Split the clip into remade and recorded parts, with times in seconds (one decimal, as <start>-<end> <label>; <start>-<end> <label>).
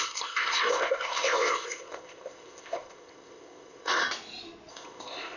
0.0-4.0 remade; 4.0-4.7 recorded; 4.7-5.4 remade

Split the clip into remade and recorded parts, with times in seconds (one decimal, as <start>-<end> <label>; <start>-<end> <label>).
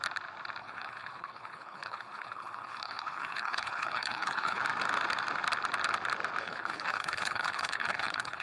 0.0-0.6 recorded; 0.6-4.6 remade; 4.6-6.4 recorded; 6.4-8.4 remade